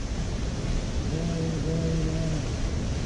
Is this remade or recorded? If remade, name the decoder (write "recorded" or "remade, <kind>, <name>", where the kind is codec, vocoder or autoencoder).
recorded